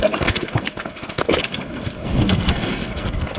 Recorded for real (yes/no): no